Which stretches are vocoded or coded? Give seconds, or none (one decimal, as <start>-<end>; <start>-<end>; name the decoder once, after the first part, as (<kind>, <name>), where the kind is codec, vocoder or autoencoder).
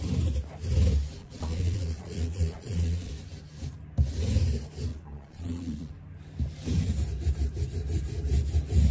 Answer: 1.2-3.1 (vocoder, Vocos); 4.9-5.9